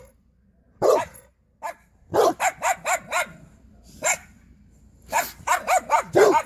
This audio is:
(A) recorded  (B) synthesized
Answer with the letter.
A